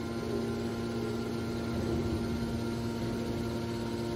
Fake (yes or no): no